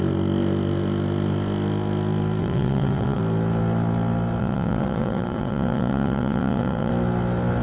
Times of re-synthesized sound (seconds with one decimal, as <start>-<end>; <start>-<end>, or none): 2.4-3.2; 4.4-6.9